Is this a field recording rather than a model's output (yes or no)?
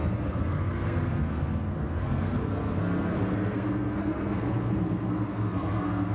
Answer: no